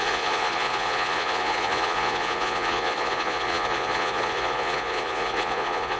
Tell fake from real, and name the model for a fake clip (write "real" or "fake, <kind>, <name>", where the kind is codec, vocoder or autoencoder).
fake, vocoder, Vocos